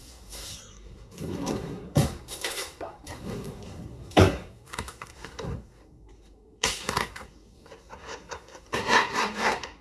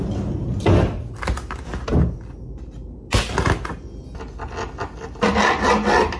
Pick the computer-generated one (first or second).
first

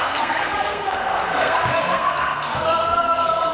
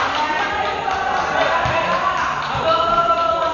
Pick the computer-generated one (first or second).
first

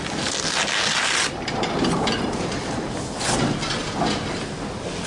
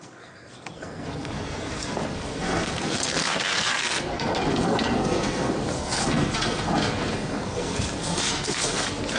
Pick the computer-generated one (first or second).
second